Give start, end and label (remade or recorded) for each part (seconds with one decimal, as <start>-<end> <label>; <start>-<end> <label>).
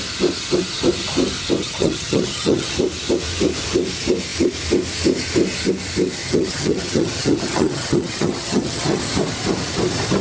0.0-1.6 recorded; 1.6-2.7 remade; 2.7-6.2 recorded; 6.2-9.0 remade; 9.0-10.2 recorded